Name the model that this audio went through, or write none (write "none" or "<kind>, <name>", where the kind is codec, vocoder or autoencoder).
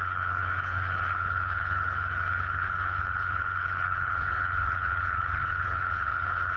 codec, HILCodec